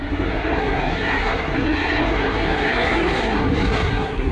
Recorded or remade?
remade